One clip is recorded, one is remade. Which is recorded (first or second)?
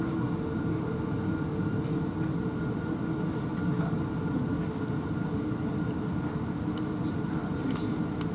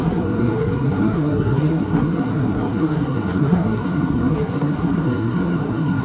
first